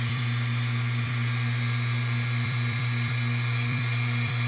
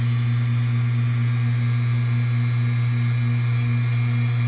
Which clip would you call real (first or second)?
second